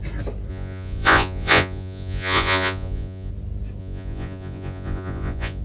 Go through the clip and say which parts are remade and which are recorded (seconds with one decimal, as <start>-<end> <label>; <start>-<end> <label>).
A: 0.0-0.5 recorded; 0.5-3.3 remade; 3.3-3.8 recorded; 3.8-5.6 remade